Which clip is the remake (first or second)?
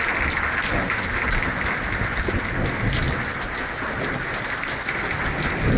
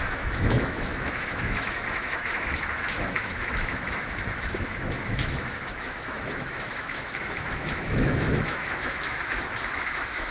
second